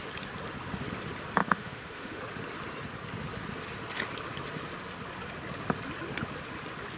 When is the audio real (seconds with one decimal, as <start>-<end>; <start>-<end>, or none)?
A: 0.0-1.4; 2.2-7.0